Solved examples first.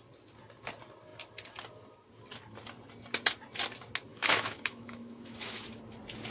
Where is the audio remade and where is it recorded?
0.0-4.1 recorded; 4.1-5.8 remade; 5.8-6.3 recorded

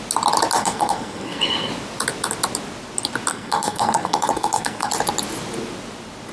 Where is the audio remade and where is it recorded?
0.0-0.6 recorded; 0.6-1.7 remade; 1.7-3.3 recorded; 3.3-4.9 remade; 4.9-6.3 recorded

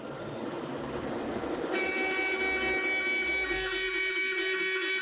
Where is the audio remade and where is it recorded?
0.0-0.4 recorded; 0.4-1.9 remade; 1.9-5.0 recorded

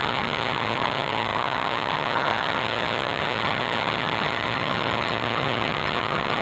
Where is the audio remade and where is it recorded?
0.0-6.4 remade

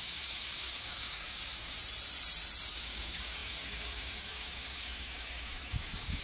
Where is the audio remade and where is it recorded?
0.0-1.8 remade; 1.8-2.7 recorded; 2.7-6.2 remade

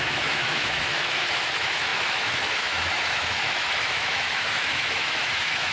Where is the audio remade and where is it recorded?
0.0-5.7 remade

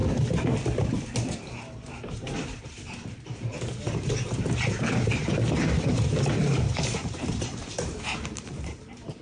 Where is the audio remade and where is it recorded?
0.0-2.6 recorded; 2.6-5.2 remade; 5.2-5.9 recorded; 5.9-9.2 remade

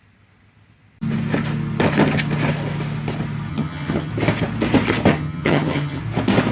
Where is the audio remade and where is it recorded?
0.0-3.5 recorded; 3.5-4.1 remade; 4.1-5.1 recorded; 5.1-6.0 remade; 6.0-6.5 recorded